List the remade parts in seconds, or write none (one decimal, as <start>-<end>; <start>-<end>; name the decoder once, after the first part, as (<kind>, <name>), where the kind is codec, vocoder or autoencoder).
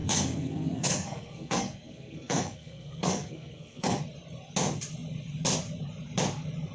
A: 0.0-4.0 (codec, SNAC)